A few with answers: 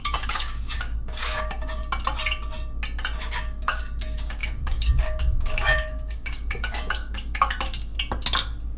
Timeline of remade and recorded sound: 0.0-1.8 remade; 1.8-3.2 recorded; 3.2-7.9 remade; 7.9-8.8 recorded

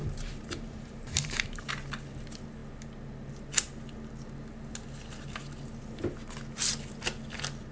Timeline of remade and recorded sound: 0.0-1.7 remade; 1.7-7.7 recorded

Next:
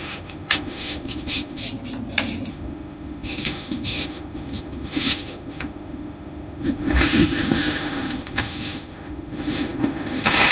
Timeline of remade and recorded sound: 0.0-1.6 remade; 1.6-2.5 recorded; 2.5-10.5 remade